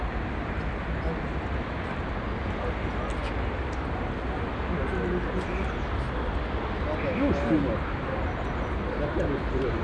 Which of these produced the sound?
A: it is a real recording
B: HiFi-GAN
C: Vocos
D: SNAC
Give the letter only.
A